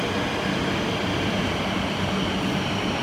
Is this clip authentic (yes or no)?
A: yes